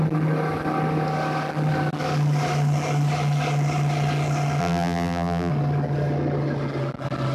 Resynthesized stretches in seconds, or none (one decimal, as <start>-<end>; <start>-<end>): 4.6-5.5